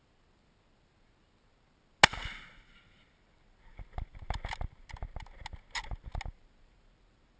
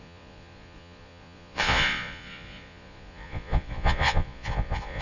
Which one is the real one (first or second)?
first